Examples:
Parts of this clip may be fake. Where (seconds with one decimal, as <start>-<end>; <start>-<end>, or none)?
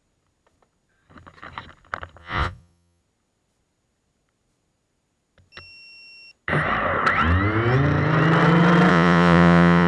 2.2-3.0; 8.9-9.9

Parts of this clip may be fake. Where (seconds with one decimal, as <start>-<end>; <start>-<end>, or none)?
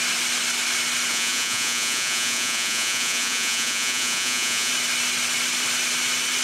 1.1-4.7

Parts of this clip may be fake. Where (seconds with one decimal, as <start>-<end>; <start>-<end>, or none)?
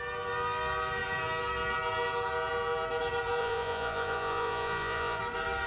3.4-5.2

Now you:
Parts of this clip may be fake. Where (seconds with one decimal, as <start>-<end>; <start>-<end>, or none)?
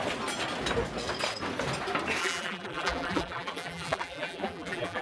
2.2-5.0